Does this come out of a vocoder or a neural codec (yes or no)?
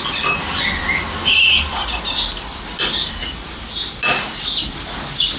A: no